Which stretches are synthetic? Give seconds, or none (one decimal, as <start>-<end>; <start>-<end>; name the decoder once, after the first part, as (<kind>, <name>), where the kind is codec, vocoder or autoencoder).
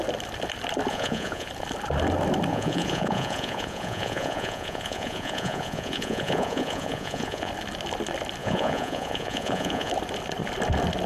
0.9-1.5 (vocoder, Vocos); 2.5-7.5; 8.4-9.9